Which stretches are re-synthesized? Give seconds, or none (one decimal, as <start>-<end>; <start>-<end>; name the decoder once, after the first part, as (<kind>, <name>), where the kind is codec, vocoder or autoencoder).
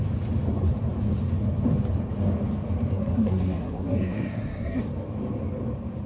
2.9-4.8 (codec, SNAC)